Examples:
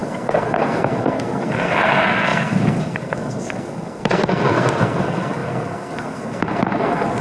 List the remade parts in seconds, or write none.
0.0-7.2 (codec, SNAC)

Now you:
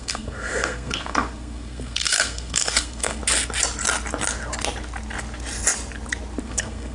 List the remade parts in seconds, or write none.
0.0-3.2 (codec, SNAC); 6.4-6.9

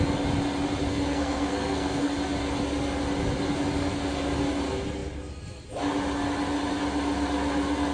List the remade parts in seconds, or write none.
0.9-2.1 (codec, SNAC)

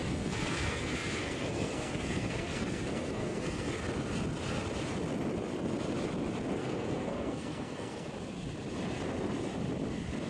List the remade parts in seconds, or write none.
0.0-3.7 (codec, SNAC); 6.6-8.1

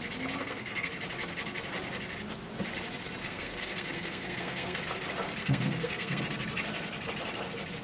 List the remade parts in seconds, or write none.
0.4-0.9 (codec, SNAC); 3.2-4.8; 5.4-6.2